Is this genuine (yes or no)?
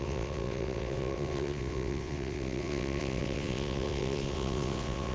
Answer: no